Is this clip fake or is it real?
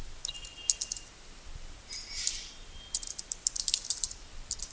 real